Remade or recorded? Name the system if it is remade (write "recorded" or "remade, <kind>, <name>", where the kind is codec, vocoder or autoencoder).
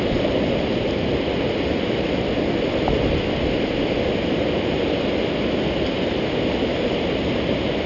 recorded